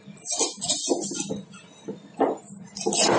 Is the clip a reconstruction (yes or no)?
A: no